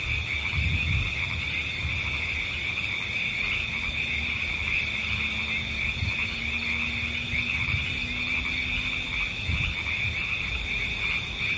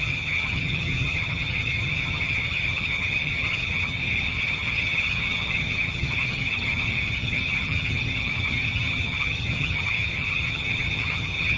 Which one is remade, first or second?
second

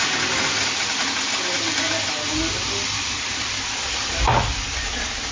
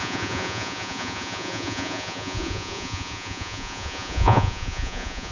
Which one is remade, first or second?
second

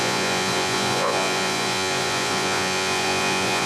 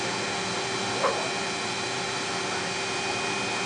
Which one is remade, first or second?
first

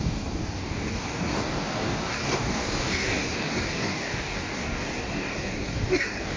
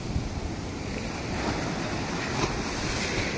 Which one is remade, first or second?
first